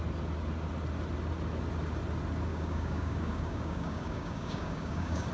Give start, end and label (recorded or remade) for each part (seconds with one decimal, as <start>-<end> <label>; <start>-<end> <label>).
0.0-2.5 recorded; 2.5-5.3 remade